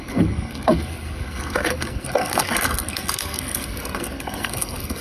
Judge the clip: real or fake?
fake